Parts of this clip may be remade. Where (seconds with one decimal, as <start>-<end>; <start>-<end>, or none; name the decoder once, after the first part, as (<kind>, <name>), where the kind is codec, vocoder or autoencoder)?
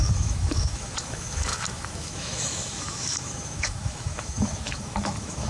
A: 0.0-5.5 (autoencoder, DAC-VAE)